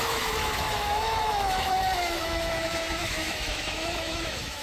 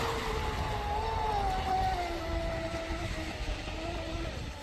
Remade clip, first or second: first